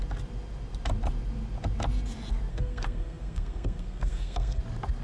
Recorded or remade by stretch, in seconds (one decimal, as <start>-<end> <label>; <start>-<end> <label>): 0.0-2.5 recorded; 2.5-4.6 remade; 4.6-5.0 recorded